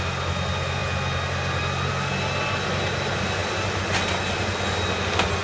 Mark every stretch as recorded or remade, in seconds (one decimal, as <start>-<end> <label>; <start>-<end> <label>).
0.0-5.4 recorded